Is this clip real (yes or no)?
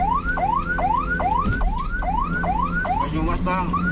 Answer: yes